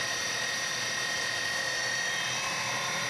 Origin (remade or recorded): remade